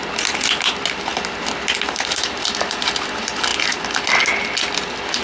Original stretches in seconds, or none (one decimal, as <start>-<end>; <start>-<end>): 0.0-5.2